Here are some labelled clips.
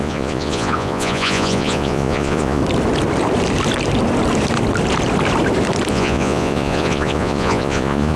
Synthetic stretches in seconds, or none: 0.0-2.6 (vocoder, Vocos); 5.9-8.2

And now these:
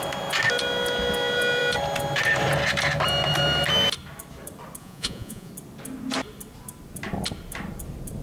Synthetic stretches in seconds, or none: 4.8-5.5 (vocoder, Vocos)

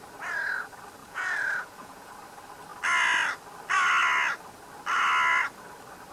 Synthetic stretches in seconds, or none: 1.0-2.1 (vocoder, Vocos)

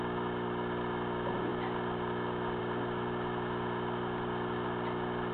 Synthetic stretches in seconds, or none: none

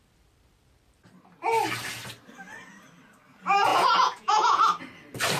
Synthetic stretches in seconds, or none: 3.7-4.6 (vocoder, Vocos)

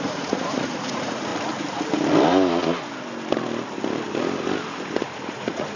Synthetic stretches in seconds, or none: 0.0-1.3 (vocoder, Vocos); 4.8-5.8